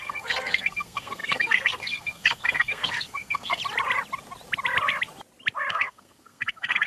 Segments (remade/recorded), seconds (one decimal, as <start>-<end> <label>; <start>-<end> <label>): 0.0-3.6 remade; 3.6-5.7 recorded; 5.7-6.9 remade